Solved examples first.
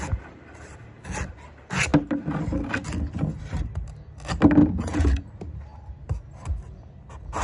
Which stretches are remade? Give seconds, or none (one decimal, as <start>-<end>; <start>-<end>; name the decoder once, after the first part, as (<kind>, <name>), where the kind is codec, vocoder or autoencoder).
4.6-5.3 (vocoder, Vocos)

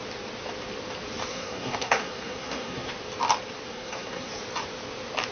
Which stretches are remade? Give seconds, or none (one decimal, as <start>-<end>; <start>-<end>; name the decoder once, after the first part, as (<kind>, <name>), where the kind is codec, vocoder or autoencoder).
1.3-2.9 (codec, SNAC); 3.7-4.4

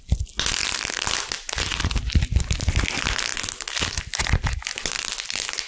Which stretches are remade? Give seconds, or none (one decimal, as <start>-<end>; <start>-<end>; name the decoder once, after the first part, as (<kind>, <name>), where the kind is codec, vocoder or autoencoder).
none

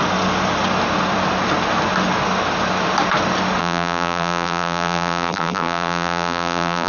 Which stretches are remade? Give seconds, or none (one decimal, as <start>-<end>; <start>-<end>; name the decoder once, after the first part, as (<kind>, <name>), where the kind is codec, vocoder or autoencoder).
3.6-6.9 (vocoder, BigVGAN v2)